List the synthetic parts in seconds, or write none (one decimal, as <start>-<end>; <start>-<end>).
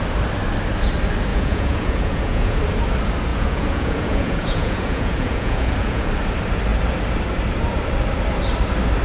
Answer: 1.3-2.6; 3.3-6.1